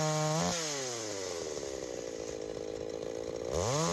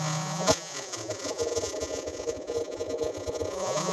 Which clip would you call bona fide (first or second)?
first